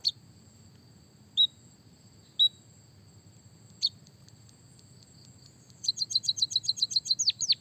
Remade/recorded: recorded